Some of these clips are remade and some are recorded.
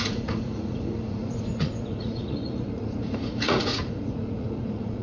remade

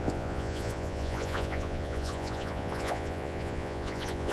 remade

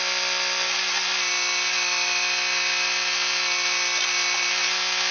recorded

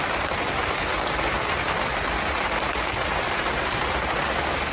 recorded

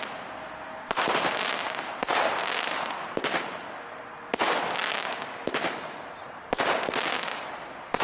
recorded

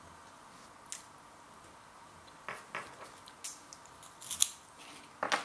recorded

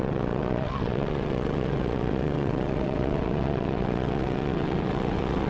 remade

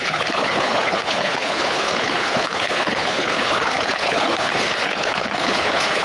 remade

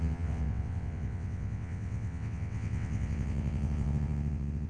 remade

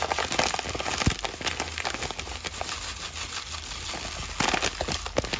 recorded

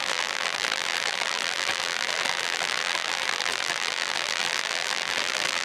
remade